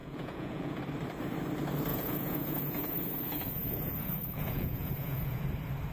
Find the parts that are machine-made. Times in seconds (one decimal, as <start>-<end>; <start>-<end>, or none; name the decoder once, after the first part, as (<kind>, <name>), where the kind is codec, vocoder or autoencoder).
0.0-0.8 (vocoder, Vocos); 1.9-5.4